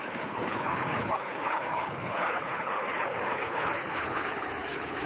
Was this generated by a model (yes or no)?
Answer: yes